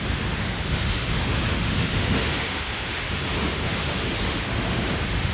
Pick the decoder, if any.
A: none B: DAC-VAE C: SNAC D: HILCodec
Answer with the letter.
B